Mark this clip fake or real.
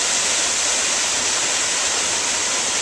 real